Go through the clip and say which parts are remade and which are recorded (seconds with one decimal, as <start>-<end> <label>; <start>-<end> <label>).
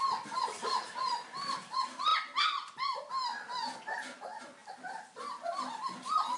0.0-6.4 recorded